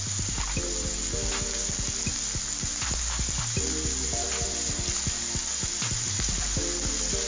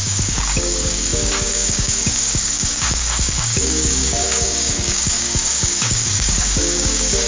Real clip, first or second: first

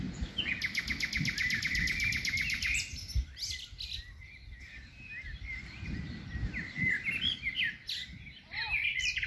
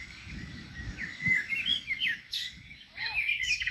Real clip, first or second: first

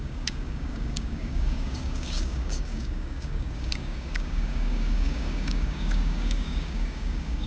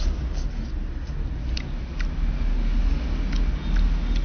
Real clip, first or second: second